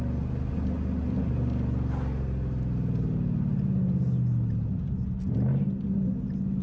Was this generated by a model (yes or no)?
no